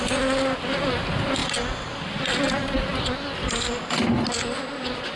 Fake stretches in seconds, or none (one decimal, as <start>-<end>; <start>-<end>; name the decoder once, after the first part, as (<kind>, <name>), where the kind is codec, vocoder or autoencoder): none